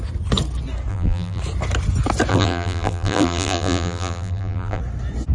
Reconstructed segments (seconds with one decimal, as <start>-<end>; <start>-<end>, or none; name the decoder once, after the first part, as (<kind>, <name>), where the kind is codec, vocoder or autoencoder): 0.9-1.4 (vocoder, BigVGAN v2); 2.3-4.8